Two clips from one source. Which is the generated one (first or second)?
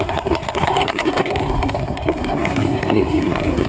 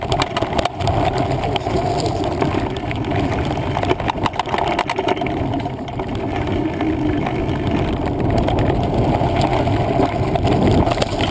first